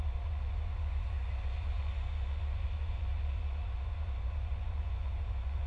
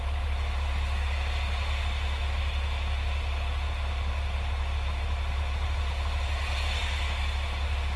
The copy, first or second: first